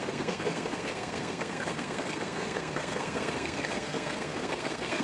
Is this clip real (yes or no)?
no